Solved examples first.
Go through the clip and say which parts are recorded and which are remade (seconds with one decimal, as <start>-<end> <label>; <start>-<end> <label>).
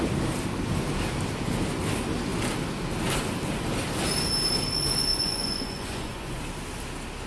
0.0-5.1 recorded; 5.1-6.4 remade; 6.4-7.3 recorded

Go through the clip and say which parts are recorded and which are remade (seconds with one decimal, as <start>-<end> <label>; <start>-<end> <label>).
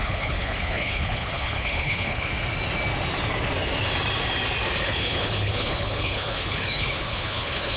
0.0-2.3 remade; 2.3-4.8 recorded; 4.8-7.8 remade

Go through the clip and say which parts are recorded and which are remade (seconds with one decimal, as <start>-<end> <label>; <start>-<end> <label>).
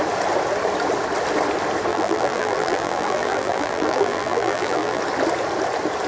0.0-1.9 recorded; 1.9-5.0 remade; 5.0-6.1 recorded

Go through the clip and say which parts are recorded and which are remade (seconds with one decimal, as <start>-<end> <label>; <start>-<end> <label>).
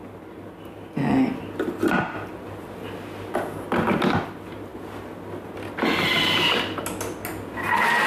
0.0-8.1 recorded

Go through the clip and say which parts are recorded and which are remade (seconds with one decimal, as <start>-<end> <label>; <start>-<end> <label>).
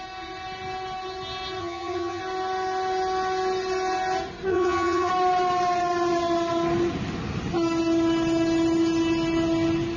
0.0-1.6 recorded; 1.6-2.2 remade; 2.2-4.5 recorded; 4.5-5.1 remade; 5.1-10.0 recorded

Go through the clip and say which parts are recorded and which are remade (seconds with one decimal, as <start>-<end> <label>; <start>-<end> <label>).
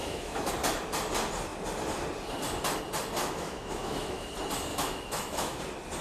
0.0-0.5 remade; 0.5-3.2 recorded; 3.2-4.3 remade; 4.3-4.7 recorded; 4.7-5.6 remade; 5.6-6.0 recorded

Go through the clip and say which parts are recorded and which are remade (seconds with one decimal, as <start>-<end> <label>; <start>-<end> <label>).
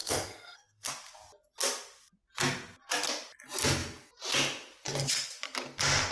0.0-0.9 remade; 0.9-6.1 recorded